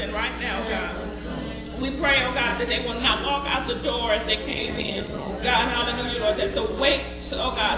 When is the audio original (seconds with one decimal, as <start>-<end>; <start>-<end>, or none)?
0.0-4.5; 5.3-7.8